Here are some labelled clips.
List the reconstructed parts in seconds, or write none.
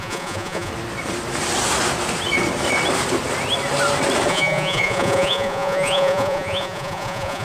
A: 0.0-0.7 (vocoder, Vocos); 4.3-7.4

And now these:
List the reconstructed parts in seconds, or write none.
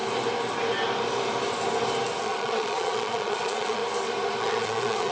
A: 2.2-3.8 (vocoder, Vocos); 4.4-5.1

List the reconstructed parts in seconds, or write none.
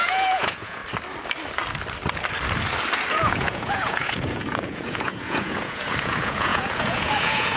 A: 0.0-0.8 (vocoder, Vocos); 3.1-7.6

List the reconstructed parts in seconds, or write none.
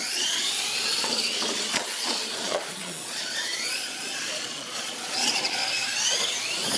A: 0.0-5.6 (vocoder, Vocos)